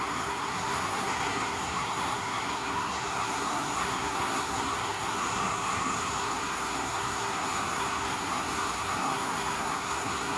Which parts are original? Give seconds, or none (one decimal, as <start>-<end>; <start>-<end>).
none